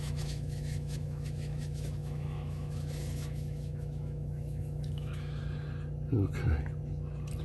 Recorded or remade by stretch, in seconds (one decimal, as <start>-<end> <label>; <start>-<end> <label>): 0.0-5.4 remade; 5.4-7.4 recorded